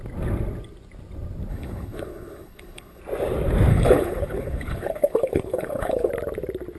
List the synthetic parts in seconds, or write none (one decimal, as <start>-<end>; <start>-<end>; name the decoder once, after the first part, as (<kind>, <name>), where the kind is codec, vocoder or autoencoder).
1.5-3.0 (codec, HILCodec); 3.7-6.1